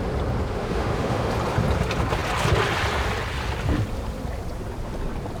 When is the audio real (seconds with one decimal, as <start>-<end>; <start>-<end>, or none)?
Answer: 0.0-0.6; 1.3-5.4